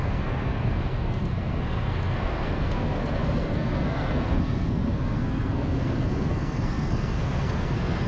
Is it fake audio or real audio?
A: fake